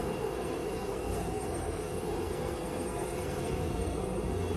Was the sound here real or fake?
fake